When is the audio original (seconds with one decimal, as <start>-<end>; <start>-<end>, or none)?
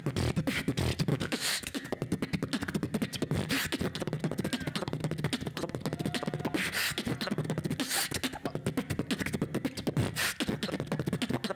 0.0-1.1; 1.9-11.6